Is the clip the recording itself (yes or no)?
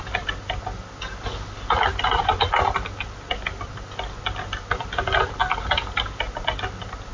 yes